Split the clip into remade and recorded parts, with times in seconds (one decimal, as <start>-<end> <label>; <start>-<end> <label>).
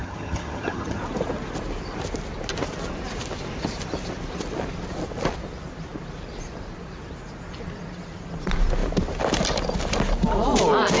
0.0-1.0 remade; 1.0-11.0 recorded